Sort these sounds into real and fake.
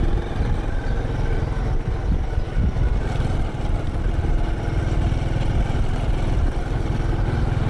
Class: real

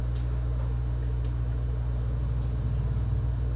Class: real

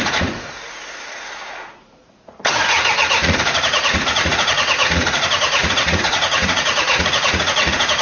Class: fake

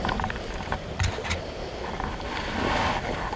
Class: real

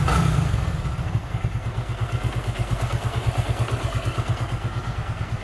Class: fake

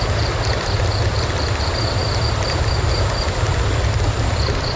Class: fake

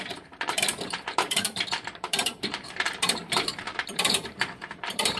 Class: fake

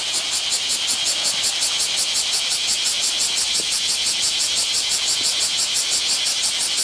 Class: real